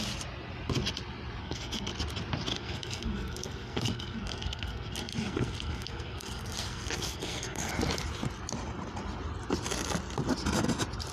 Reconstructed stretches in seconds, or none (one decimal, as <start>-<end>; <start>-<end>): 1.4-1.9; 2.5-7.7